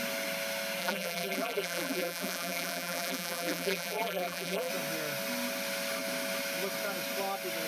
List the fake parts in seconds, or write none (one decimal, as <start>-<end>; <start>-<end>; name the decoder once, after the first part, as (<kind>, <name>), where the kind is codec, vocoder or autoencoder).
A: 0.8-4.7 (vocoder, BigVGAN v2)